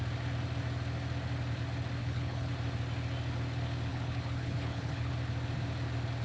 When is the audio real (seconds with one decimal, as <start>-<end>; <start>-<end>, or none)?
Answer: 0.0-2.0; 2.5-3.9; 5.1-6.2